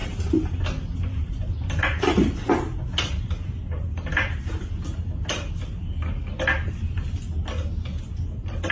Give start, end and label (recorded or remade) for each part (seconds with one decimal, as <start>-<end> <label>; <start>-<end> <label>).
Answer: 0.0-0.6 remade; 0.6-8.7 recorded